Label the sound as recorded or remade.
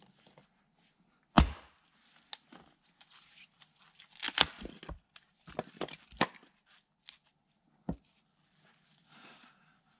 recorded